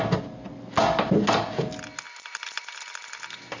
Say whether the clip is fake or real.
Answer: real